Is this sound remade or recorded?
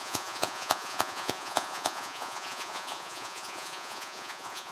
remade